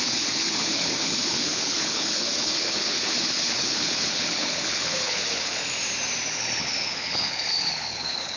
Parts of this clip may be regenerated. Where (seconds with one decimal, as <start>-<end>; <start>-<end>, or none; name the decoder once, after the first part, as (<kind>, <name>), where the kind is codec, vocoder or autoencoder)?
0.0-5.6 (codec, HILCodec); 6.3-8.4